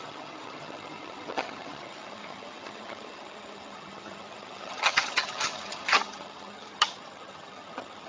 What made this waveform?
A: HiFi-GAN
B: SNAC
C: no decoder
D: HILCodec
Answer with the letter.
A